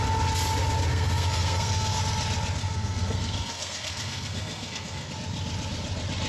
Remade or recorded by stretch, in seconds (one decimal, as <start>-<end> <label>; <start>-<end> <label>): 0.0-0.9 recorded; 0.9-2.0 remade; 2.0-2.6 recorded; 2.6-5.1 remade; 5.1-6.3 recorded